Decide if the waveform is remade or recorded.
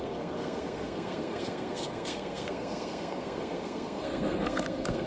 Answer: remade